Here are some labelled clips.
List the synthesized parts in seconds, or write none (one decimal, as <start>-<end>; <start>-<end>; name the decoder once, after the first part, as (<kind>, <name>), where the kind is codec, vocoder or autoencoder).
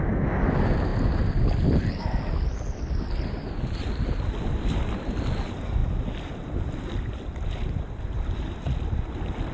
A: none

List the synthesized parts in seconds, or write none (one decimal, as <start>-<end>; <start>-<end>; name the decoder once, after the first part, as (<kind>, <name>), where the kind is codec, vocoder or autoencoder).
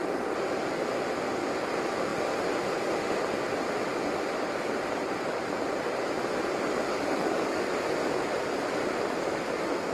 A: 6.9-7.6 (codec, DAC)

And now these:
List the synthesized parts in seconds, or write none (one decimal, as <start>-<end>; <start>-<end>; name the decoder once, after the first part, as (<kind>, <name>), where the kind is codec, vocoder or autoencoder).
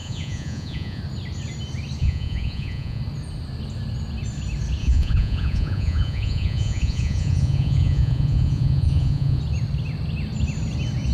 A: 0.0-1.0 (vocoder, Vocos); 2.0-3.0; 4.8-9.4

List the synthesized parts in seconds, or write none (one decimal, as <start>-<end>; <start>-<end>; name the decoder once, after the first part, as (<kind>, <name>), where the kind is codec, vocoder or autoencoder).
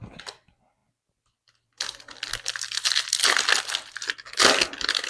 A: none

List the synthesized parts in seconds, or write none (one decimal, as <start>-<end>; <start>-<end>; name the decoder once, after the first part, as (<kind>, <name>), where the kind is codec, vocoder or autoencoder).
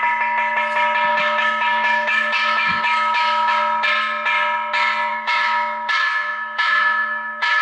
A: 1.1-3.6 (autoencoder, DAC-VAE); 5.1-7.6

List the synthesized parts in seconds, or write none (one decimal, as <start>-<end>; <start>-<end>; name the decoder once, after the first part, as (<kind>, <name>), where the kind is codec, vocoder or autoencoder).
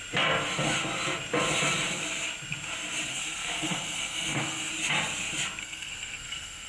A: 3.1-4.7 (codec, SNAC); 5.6-6.7